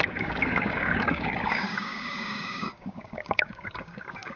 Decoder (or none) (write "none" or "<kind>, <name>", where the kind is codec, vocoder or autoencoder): codec, DAC